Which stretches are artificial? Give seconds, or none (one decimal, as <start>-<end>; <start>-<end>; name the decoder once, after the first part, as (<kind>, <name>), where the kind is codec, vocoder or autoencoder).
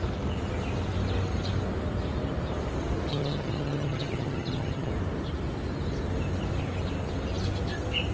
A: 3.1-4.9 (vocoder, HiFi-GAN)